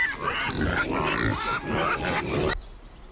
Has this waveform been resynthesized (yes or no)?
no